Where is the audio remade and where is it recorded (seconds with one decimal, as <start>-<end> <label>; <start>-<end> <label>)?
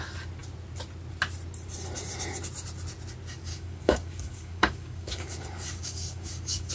0.0-3.5 recorded; 3.5-6.7 remade